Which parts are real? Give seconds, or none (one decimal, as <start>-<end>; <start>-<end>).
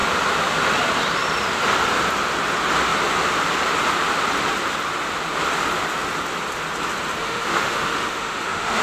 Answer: 0.0-7.2